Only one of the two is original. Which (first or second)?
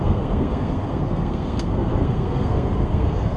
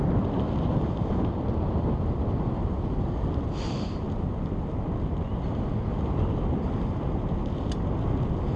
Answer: second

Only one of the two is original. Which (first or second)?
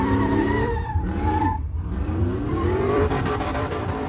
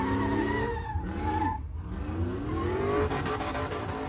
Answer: second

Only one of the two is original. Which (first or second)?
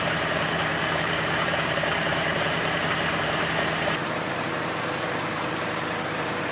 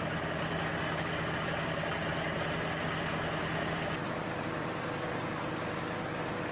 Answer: second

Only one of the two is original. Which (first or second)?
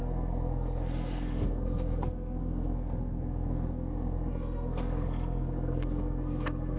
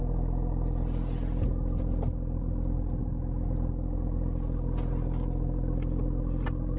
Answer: second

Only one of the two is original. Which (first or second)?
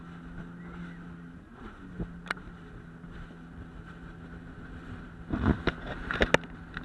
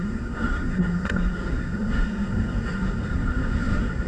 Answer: first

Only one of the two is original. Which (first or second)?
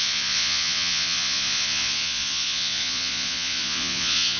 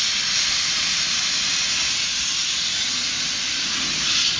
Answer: second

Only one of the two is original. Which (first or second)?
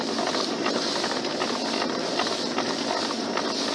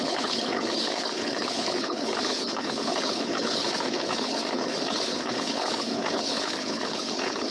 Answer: first